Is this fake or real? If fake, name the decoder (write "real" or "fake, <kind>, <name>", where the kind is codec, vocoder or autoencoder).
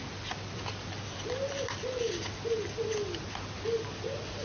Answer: real